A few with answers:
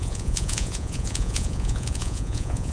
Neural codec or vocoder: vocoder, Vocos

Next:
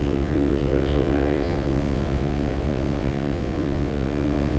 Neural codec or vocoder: vocoder, WaveNeXt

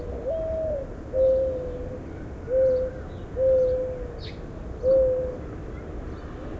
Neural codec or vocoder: none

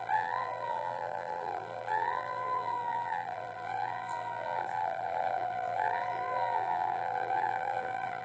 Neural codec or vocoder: vocoder, BigVGAN v2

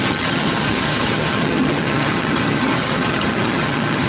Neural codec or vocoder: vocoder, HiFi-GAN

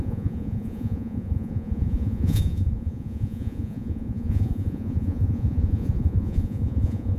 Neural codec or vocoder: vocoder, Vocos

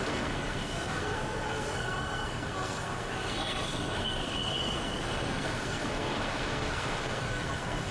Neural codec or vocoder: codec, SNAC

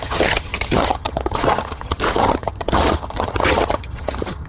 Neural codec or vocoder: vocoder, HiFi-GAN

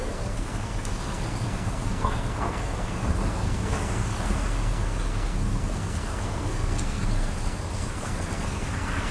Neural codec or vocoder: codec, SNAC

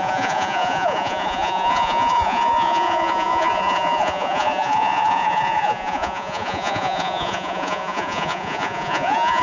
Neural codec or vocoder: vocoder, Vocos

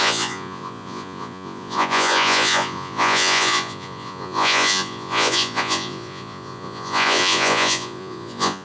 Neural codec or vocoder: vocoder, Vocos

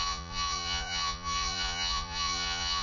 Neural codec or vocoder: vocoder, Vocos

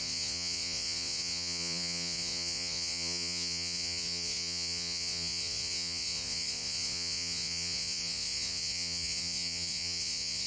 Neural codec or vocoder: vocoder, Vocos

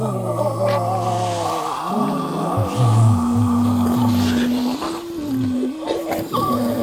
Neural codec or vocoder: none